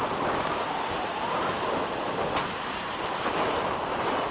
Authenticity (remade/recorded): recorded